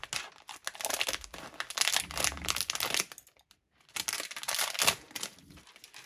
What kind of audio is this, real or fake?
real